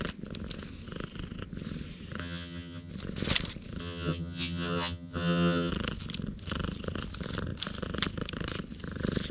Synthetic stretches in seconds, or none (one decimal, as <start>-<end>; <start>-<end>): 2.2-2.9; 3.8-5.7